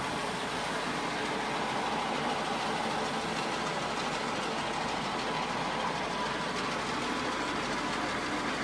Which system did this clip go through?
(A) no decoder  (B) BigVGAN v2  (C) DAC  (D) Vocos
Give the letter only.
A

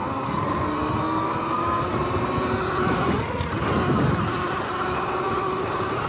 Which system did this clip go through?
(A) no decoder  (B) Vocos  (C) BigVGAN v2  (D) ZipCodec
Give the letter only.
A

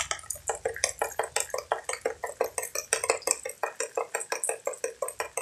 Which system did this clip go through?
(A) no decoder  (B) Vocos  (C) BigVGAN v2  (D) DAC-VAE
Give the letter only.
A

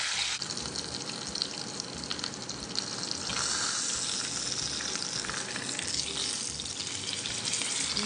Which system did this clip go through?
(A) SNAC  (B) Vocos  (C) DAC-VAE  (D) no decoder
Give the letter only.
D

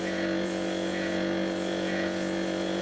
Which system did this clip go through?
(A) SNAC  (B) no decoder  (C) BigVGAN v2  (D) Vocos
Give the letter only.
D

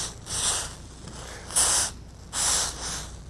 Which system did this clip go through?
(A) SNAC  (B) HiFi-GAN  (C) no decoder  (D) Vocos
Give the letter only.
C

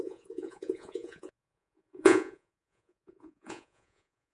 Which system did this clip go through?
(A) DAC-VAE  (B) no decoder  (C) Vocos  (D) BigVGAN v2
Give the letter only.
C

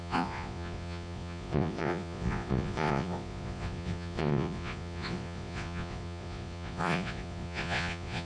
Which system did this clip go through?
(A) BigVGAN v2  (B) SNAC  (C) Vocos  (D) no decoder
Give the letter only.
C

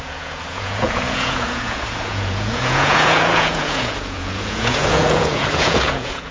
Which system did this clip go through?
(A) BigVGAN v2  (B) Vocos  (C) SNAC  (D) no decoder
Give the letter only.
B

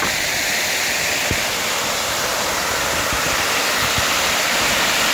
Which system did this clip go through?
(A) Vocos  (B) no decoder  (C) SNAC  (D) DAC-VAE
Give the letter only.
B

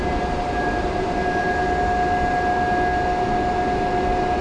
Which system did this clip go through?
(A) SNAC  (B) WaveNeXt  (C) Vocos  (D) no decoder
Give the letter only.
D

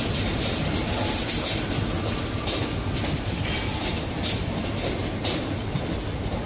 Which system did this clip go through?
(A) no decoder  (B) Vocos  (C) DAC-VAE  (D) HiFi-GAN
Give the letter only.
A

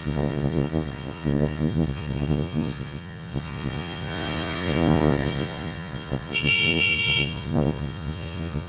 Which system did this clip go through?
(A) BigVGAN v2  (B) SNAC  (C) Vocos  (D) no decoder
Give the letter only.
C